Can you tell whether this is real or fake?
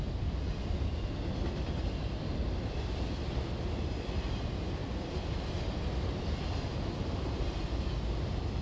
real